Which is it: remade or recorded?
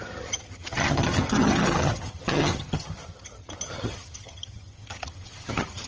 remade